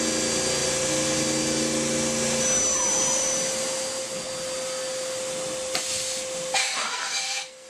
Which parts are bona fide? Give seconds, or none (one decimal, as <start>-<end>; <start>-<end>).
0.0-6.6